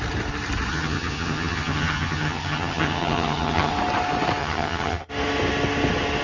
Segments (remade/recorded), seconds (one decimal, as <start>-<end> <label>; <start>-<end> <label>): 0.0-0.7 recorded; 0.7-3.7 remade; 3.7-4.4 recorded; 4.4-5.1 remade; 5.1-6.2 recorded